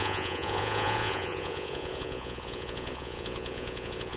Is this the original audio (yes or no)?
no